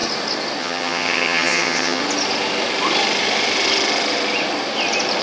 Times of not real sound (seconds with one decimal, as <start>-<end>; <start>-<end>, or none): 0.6-2.0